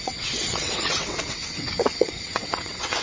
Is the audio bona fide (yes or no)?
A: no